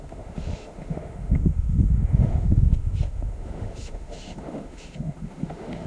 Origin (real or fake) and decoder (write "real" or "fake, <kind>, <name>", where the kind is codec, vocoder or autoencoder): fake, autoencoder, DAC-VAE